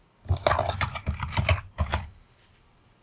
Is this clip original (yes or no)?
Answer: yes